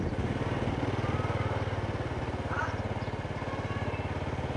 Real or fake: real